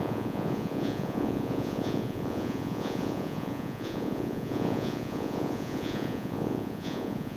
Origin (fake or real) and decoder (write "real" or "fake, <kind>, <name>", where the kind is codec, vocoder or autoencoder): fake, vocoder, Vocos